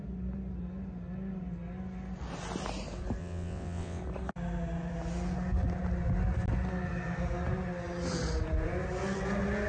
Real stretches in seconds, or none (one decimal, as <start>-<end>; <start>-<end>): 0.0-3.2; 4.0-9.7